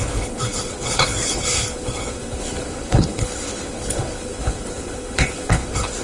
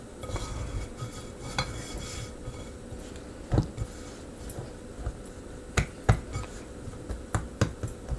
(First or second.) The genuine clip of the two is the second